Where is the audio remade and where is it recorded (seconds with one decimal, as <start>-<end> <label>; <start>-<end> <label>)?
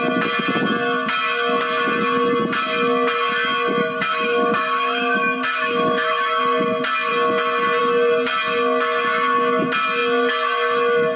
0.0-3.8 recorded; 3.8-6.4 remade; 6.4-11.2 recorded